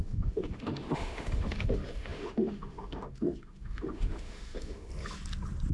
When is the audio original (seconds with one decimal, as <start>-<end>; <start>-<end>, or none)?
4.9-5.7